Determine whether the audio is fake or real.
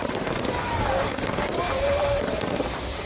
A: fake